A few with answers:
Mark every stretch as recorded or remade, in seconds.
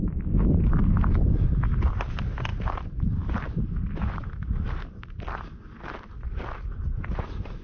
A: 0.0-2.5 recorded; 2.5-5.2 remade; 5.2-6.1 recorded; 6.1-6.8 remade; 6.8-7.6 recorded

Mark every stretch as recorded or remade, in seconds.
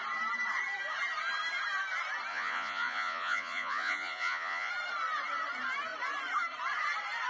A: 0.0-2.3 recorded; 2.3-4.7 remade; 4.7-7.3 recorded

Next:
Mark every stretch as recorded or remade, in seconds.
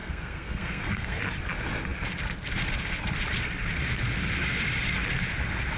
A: 0.0-1.2 remade; 1.2-5.8 recorded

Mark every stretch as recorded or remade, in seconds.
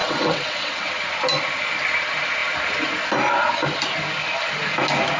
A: 0.0-0.9 remade; 0.9-5.2 recorded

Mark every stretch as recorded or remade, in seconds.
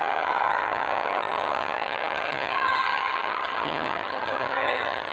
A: 0.0-5.1 remade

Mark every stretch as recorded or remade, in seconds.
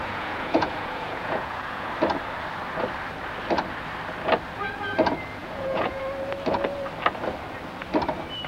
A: 0.0-1.9 remade; 1.9-5.4 recorded; 5.4-6.0 remade; 6.0-8.5 recorded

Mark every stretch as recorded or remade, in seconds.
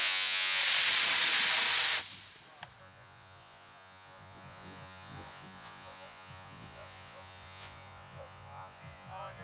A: 0.0-0.6 remade; 0.6-2.8 recorded; 2.8-9.4 remade